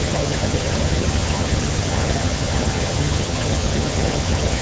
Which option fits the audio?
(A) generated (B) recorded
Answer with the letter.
A